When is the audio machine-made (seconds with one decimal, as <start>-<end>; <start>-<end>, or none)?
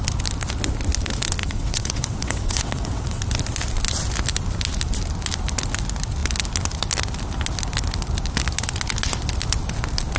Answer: 1.4-3.2